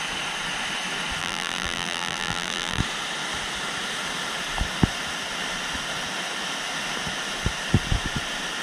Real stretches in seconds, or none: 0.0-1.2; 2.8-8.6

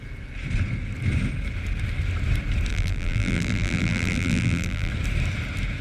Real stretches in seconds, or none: 0.0-2.7; 4.9-5.8